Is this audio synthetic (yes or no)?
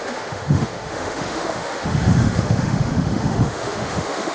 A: yes